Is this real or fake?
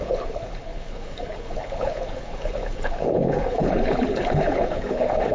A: fake